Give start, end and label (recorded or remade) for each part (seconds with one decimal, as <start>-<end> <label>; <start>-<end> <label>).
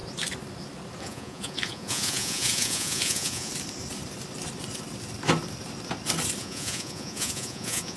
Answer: 0.0-1.0 recorded; 1.0-3.5 remade; 3.5-6.4 recorded; 6.4-8.0 remade